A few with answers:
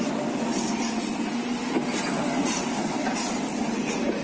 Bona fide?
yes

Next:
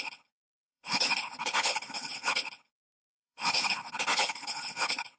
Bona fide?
no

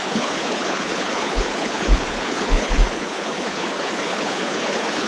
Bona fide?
no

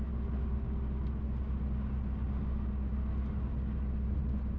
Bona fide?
yes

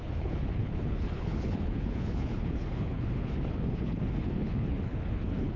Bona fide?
no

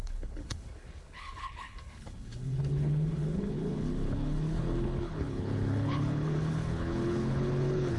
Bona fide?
no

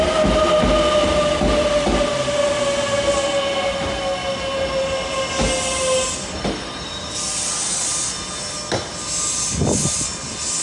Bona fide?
yes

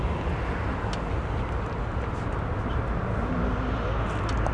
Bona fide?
yes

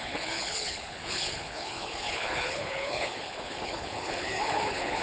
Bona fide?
no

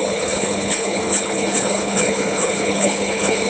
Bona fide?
no